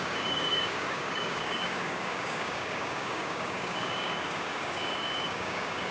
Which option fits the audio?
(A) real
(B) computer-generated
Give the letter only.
B